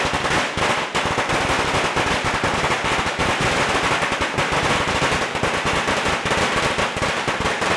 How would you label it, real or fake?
real